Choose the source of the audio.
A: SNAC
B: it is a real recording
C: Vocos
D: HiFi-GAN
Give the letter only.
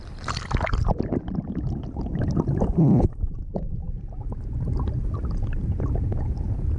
B